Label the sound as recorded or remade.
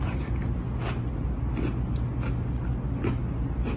recorded